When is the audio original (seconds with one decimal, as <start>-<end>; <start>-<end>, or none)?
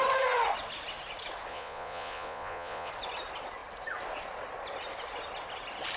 0.0-1.5; 2.9-6.0